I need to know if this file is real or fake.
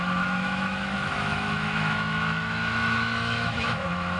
fake